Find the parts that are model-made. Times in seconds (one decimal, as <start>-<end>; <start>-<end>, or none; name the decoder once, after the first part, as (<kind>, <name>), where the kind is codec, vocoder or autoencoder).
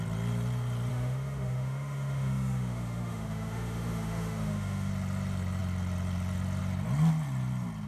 0.9-4.9 (autoencoder, DAC-VAE)